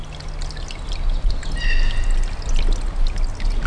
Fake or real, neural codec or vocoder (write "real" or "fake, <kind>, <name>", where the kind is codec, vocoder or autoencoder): real